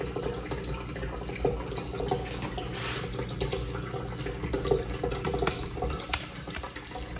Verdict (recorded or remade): recorded